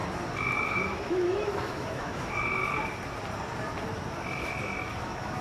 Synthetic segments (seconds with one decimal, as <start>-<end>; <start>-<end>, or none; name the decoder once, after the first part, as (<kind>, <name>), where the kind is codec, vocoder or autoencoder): 0.6-2.6 (autoencoder, DAC-VAE); 5.0-5.4